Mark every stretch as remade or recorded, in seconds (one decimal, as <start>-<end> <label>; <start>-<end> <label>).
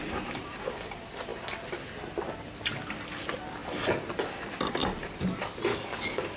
0.0-5.7 recorded; 5.7-6.4 remade